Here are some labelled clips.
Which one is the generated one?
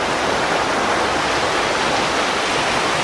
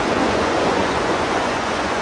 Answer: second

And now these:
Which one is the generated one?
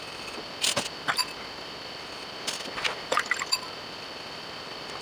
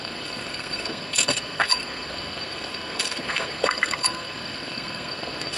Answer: second